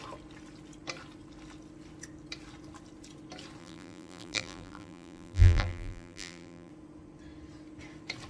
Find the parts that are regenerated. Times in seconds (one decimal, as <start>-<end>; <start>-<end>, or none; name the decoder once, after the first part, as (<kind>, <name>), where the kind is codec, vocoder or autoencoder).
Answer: 3.6-6.7 (vocoder, BigVGAN v2)